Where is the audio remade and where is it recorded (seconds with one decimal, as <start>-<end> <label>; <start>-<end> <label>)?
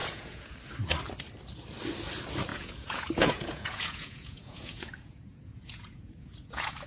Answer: 0.0-0.5 remade; 0.5-2.5 recorded; 2.5-6.9 remade